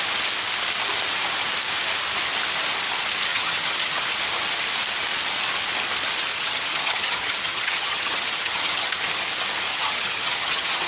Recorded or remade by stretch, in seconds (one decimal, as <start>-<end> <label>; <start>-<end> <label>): 0.0-3.3 recorded; 3.3-4.0 remade; 4.0-6.3 recorded; 6.3-9.0 remade; 9.0-9.7 recorded; 9.7-10.9 remade